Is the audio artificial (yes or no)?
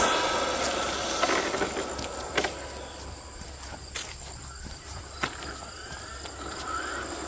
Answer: no